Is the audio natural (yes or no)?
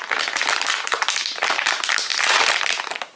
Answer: no